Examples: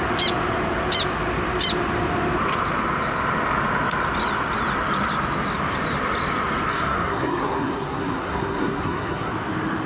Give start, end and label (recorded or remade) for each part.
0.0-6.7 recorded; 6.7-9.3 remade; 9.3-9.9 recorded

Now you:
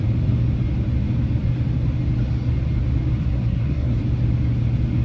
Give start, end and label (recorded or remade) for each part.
0.0-3.2 recorded; 3.2-4.0 remade; 4.0-5.0 recorded

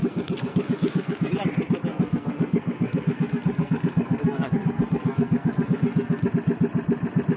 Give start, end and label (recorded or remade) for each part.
0.0-1.3 remade; 1.3-1.9 recorded; 1.9-6.3 remade; 6.3-7.4 recorded

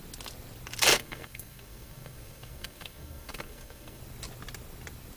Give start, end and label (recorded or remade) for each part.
0.0-0.9 recorded; 0.9-4.0 remade; 4.0-5.2 recorded

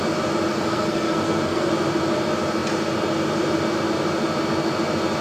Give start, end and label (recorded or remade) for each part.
0.0-0.5 recorded; 0.5-1.7 remade; 1.7-5.2 recorded

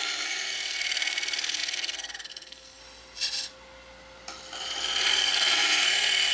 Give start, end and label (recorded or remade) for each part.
0.0-2.8 remade; 2.8-5.1 recorded; 5.1-6.3 remade